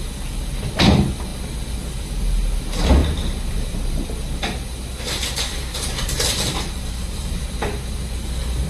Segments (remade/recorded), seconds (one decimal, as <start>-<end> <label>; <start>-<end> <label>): 0.0-3.0 recorded; 3.0-7.4 remade; 7.4-8.7 recorded